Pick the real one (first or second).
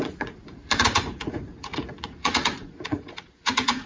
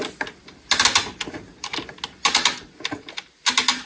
second